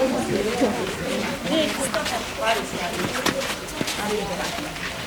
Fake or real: real